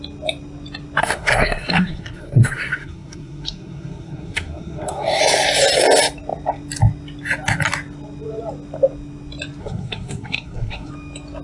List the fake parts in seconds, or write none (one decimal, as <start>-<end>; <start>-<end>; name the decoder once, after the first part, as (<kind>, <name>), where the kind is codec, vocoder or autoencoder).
1.0-5.2 (codec, SNAC); 9.6-10.9